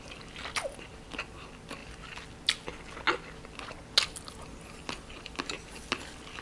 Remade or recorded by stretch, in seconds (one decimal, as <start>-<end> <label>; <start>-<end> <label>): 0.0-6.4 recorded